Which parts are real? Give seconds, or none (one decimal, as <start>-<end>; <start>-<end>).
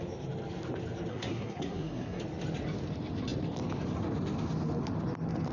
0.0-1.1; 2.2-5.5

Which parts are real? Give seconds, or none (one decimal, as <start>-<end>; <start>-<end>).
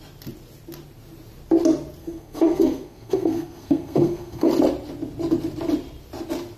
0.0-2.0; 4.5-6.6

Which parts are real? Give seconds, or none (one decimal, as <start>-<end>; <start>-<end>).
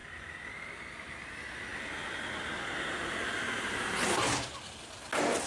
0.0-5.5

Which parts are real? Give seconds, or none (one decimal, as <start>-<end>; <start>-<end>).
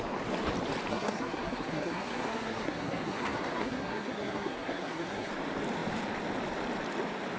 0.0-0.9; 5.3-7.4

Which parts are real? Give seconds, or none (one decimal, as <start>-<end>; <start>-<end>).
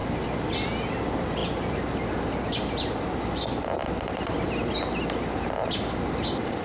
0.0-6.6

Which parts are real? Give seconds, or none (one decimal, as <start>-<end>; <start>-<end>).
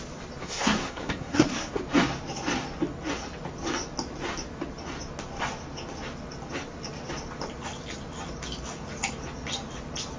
0.0-0.4; 1.8-10.2